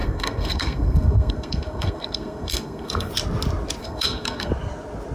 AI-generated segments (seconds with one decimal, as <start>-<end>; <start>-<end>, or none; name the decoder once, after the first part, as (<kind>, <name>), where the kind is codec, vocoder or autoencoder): 0.0-3.1 (codec, SNAC); 3.8-4.5